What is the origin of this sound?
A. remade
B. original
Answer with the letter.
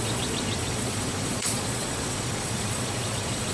A